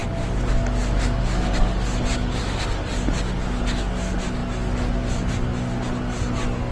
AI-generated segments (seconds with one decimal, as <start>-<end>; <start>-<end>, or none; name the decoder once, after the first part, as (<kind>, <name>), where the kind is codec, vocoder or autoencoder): none